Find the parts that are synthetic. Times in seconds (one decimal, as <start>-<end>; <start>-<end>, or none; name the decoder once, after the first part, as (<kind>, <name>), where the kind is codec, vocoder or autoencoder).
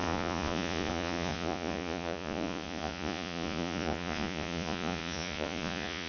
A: 0.0-6.1 (vocoder, Vocos)